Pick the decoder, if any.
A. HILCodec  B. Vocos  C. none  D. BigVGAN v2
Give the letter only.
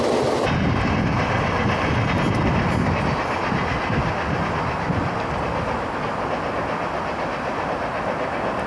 C